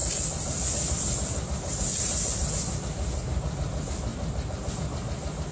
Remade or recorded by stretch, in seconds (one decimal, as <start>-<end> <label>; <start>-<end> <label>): 0.0-5.5 recorded